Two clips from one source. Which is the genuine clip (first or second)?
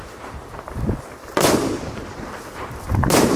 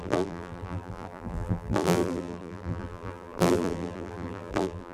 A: first